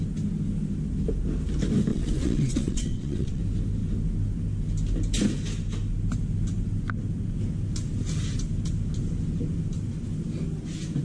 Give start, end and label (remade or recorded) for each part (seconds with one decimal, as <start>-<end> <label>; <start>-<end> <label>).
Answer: 0.0-1.9 recorded; 1.9-3.4 remade; 3.4-11.0 recorded